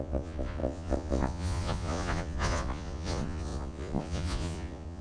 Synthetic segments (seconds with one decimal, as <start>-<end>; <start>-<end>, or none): 0.0-5.0